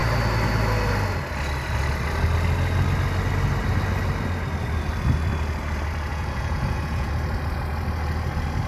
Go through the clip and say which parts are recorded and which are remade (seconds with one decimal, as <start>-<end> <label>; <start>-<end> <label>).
0.0-6.1 recorded; 6.1-7.1 remade; 7.1-8.7 recorded